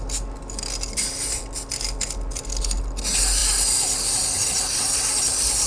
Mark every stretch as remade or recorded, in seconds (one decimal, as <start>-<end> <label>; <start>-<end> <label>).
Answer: 0.0-5.7 recorded